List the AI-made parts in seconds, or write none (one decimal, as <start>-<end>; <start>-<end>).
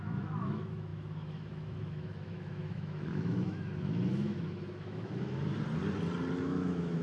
0.0-5.5; 6.4-7.0